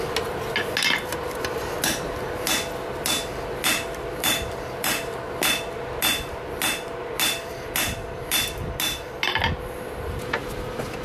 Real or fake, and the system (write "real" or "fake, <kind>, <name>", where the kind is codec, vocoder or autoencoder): real